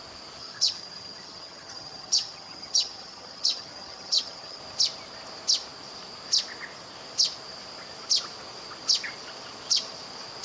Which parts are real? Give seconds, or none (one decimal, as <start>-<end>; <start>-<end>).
0.0-0.4; 4.6-10.4